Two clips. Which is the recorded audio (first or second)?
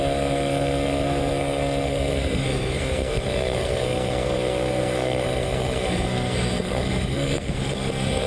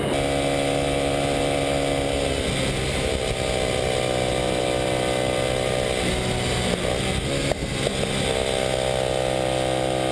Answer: second